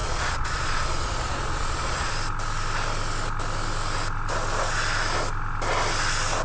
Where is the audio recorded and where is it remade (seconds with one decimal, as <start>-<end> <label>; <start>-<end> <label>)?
0.0-2.1 remade; 2.1-6.4 recorded